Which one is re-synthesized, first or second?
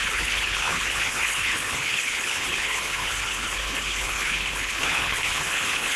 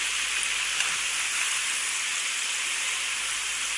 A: first